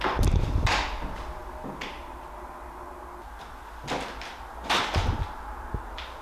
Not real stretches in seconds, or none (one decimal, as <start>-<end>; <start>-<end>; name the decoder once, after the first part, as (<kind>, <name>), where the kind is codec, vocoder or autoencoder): none